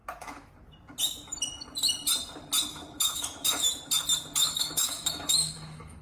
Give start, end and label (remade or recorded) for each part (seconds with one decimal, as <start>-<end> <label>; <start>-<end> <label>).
0.0-0.5 remade; 0.5-2.7 recorded; 2.7-3.8 remade; 3.8-4.4 recorded; 4.4-6.0 remade